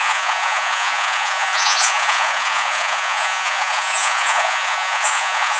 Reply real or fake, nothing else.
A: fake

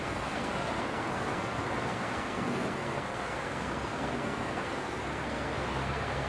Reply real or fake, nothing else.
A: fake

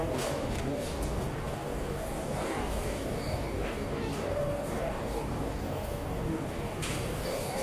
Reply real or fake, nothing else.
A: fake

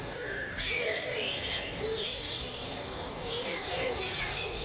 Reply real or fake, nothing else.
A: fake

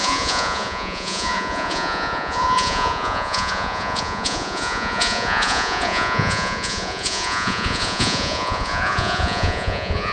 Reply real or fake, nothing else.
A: fake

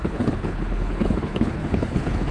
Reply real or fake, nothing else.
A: fake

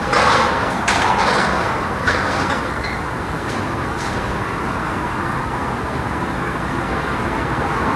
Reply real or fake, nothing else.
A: fake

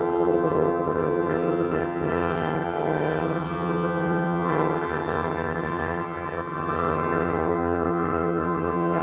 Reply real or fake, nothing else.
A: fake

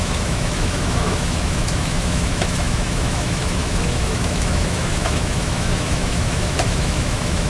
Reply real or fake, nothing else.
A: fake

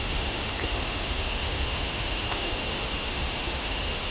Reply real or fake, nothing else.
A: fake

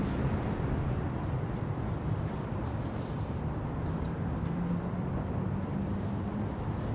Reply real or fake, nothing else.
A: real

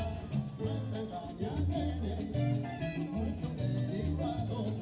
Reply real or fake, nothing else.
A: real